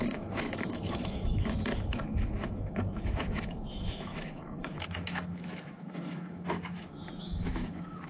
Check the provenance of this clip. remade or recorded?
remade